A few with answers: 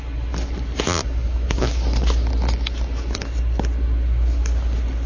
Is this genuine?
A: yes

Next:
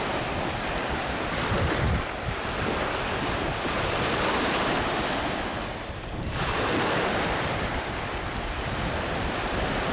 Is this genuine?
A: yes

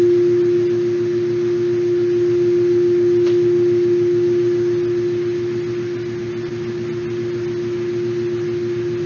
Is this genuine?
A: yes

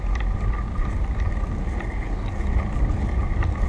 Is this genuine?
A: yes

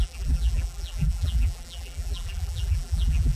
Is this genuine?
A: no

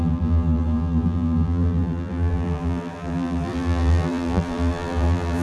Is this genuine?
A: no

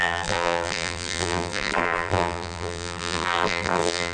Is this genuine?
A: no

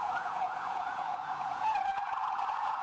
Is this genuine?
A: no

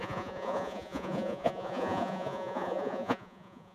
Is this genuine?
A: no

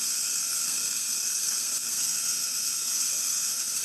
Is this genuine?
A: no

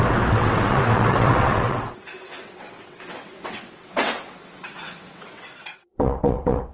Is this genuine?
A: no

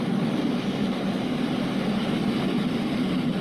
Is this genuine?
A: yes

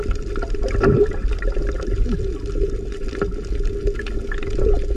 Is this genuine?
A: yes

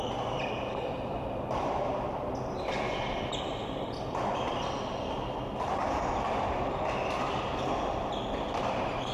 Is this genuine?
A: yes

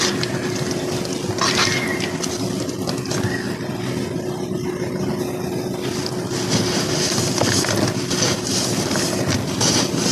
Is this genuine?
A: yes